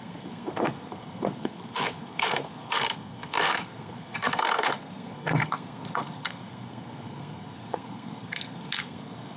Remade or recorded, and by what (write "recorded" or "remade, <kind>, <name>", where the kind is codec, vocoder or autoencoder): remade, codec, SNAC